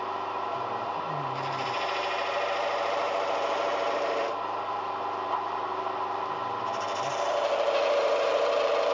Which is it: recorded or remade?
remade